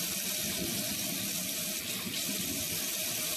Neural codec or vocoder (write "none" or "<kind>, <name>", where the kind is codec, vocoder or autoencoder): none